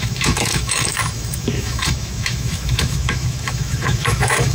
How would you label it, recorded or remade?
remade